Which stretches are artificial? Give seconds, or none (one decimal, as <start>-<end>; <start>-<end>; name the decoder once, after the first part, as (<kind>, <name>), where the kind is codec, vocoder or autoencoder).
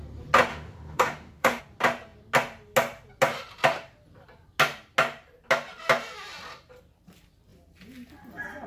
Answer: 0.5-1.6 (autoencoder, DAC-VAE)